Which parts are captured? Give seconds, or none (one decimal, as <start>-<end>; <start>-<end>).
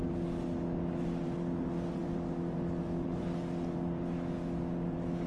0.0-5.3